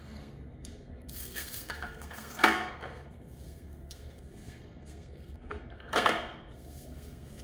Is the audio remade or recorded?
remade